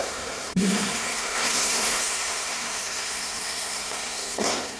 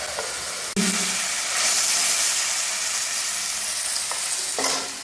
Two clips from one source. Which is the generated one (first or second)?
first